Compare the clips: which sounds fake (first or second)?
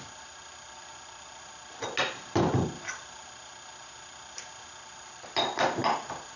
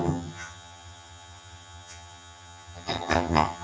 second